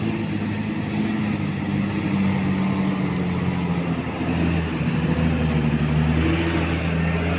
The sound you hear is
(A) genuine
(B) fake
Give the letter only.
A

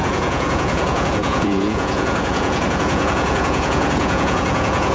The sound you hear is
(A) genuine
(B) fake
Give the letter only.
B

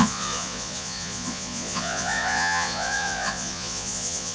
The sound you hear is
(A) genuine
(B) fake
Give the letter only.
B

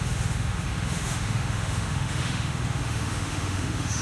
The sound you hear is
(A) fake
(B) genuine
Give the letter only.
A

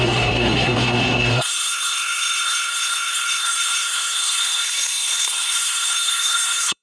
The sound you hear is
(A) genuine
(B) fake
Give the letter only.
B